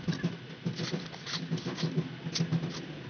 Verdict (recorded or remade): recorded